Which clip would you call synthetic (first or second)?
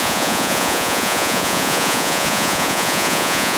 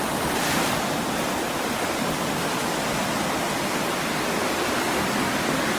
first